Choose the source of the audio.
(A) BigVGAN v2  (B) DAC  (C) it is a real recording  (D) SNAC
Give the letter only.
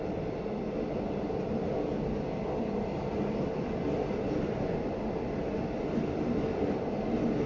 C